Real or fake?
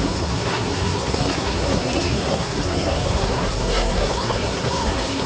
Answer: fake